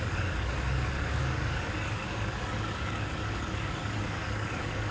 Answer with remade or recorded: remade